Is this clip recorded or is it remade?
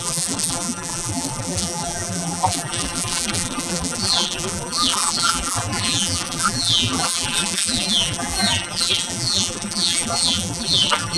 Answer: remade